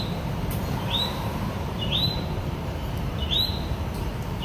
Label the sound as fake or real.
fake